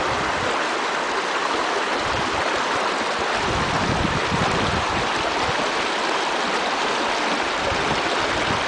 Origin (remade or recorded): recorded